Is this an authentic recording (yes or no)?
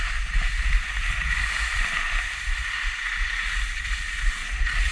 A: yes